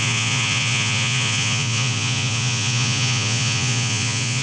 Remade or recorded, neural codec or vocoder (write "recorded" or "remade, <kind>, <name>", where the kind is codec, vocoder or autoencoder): remade, vocoder, Vocos